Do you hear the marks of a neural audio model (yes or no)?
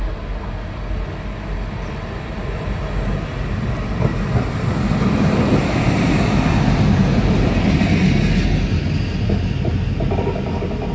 no